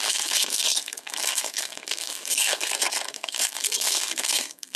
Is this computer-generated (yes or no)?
yes